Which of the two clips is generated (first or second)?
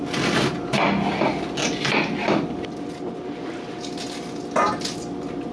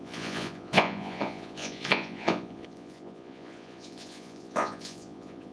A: second